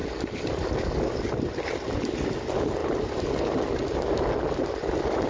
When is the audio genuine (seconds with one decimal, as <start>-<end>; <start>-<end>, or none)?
0.0-5.3

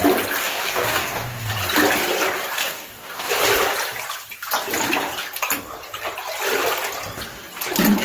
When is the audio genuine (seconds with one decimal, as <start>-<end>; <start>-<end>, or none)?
0.0-0.4; 1.5-2.6; 3.3-8.0

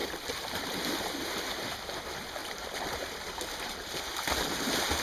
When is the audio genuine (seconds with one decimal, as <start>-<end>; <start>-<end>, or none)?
0.0-2.4; 4.5-5.0

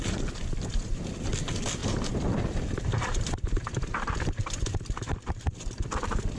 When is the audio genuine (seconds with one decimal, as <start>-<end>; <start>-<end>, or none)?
0.0-1.8; 5.6-6.4

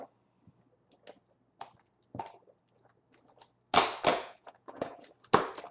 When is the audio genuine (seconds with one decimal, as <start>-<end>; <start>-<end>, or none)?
0.0-4.1; 5.0-5.7

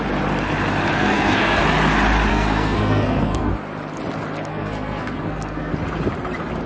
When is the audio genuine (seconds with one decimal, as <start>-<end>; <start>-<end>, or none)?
0.0-0.9; 1.6-2.3; 3.5-4.5; 5.7-6.7

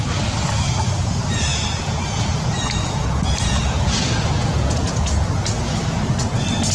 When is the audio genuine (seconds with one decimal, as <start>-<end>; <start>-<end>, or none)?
0.0-1.5; 5.1-6.7

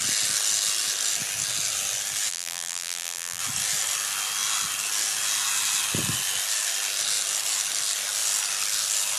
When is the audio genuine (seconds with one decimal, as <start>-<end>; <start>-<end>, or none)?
0.0-2.3; 3.4-9.2